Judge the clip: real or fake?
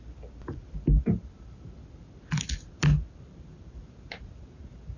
real